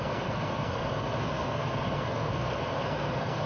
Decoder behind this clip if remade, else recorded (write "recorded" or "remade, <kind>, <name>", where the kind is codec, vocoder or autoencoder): remade, codec, SNAC